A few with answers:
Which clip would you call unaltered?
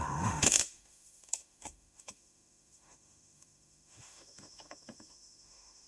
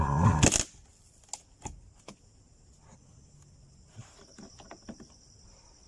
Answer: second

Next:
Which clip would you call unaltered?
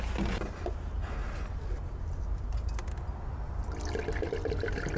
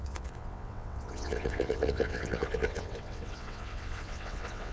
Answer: first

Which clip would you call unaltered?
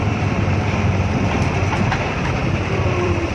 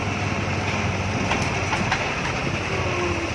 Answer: second